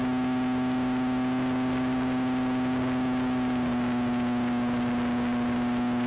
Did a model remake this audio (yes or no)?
no